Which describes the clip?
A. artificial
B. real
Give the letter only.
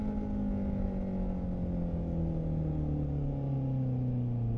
B